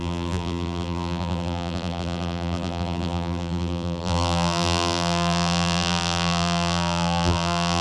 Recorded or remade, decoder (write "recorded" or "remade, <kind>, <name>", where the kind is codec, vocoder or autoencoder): remade, vocoder, BigVGAN v2